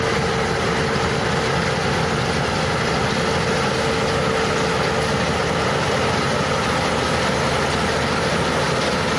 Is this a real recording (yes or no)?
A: yes